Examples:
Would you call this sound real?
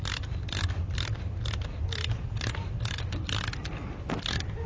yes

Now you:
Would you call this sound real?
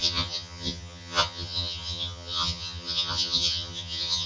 no